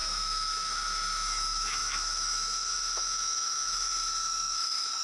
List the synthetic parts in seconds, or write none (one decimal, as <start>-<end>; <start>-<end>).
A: 0.0-5.0